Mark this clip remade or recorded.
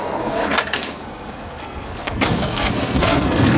remade